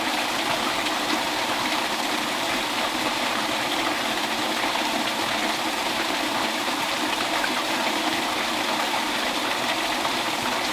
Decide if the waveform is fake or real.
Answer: fake